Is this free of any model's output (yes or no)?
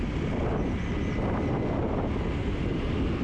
yes